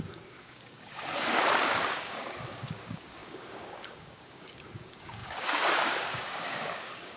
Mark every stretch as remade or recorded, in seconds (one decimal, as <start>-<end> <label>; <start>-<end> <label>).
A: 0.0-7.2 remade